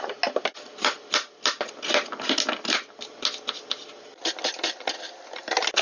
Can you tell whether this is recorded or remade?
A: recorded